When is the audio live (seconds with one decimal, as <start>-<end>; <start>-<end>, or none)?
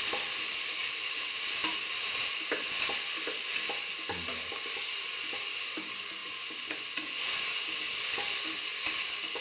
0.0-6.2; 7.4-9.4